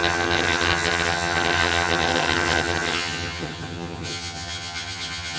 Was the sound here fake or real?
fake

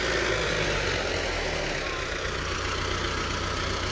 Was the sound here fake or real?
real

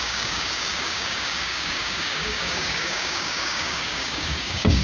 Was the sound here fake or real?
fake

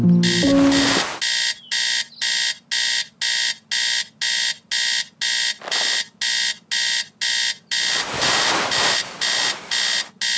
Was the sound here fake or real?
real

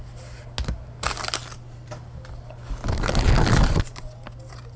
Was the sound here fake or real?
real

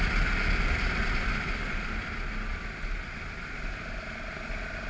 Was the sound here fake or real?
real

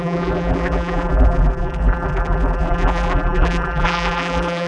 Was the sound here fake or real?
fake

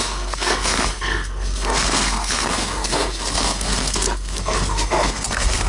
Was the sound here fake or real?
fake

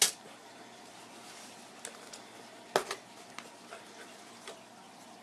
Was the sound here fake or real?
real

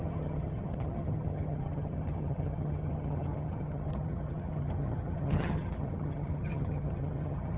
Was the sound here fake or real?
fake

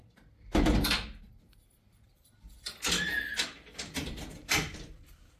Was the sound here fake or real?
fake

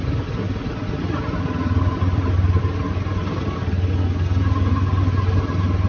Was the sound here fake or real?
real